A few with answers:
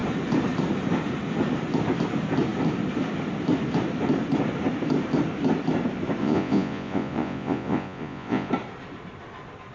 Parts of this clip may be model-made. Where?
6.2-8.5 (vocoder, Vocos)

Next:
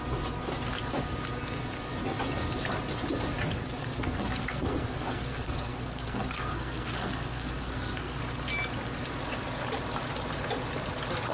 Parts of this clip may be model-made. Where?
3.8-8.2 (codec, SNAC)

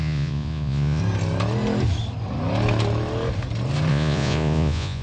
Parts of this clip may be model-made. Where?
0.0-1.0 (vocoder, Vocos); 3.9-5.0

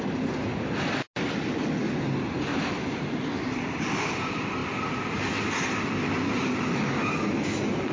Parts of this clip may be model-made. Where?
none

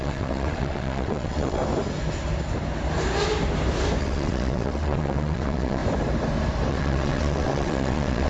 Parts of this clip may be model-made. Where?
0.0-1.6 (vocoder, WaveNeXt); 4.0-5.8; 6.7-8.3